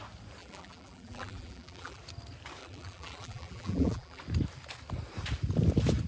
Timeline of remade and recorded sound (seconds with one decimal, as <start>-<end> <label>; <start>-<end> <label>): 0.0-0.4 recorded; 0.4-2.0 remade; 2.0-2.6 recorded; 2.6-4.2 remade; 4.2-6.1 recorded

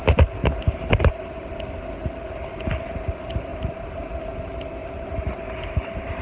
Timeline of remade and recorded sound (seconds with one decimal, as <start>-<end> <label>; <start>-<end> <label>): 0.0-0.4 recorded; 0.4-1.1 remade; 1.1-3.5 recorded; 3.5-4.1 remade; 4.1-6.2 recorded